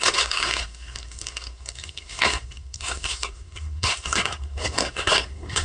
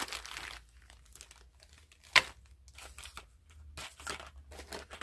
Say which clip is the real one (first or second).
second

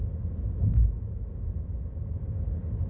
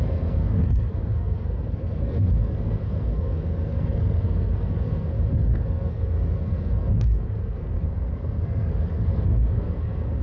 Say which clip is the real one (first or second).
first